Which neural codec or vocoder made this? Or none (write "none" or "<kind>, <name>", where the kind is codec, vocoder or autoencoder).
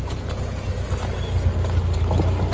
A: none